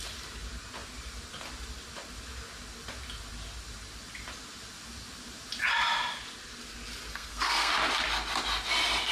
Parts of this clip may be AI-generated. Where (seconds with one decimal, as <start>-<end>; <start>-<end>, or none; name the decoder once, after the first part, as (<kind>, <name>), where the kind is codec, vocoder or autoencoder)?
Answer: 7.1-7.7 (codec, SNAC)